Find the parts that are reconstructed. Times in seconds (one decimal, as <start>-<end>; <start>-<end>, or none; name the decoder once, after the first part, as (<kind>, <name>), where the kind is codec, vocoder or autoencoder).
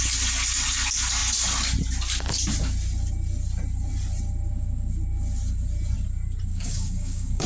6.5-7.5 (codec, DAC)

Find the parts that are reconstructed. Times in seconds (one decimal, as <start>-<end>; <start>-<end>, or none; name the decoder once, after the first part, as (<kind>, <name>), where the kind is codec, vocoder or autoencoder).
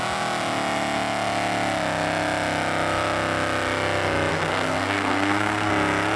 4.3-5.7 (codec, SNAC)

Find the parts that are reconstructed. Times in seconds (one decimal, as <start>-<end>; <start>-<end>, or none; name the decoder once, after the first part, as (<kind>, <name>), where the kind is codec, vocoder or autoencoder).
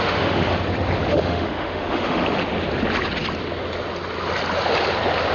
0.0-0.5 (autoencoder, DAC-VAE); 1.1-2.2